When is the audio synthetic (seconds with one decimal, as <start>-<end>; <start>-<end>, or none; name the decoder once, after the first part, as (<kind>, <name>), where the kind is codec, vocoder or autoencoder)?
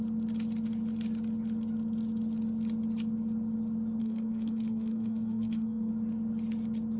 4.0-5.9 (codec, SNAC)